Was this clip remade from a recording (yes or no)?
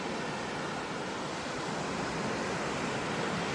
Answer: no